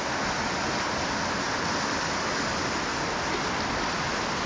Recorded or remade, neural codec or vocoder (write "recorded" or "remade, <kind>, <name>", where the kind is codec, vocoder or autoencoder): recorded